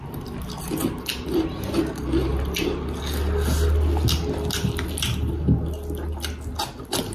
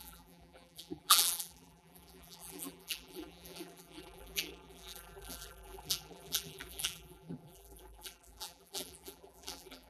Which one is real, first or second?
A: first